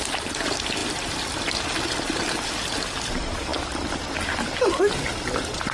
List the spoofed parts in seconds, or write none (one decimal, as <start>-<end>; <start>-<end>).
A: none